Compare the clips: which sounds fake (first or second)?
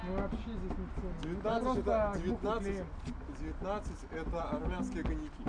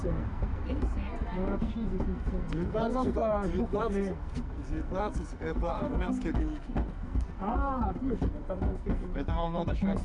second